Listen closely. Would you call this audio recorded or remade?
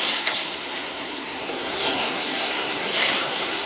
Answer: remade